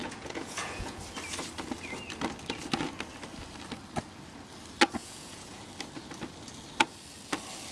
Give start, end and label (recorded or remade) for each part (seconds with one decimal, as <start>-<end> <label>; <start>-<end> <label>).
0.0-1.0 remade; 1.0-5.0 recorded; 5.0-5.7 remade; 5.7-7.7 recorded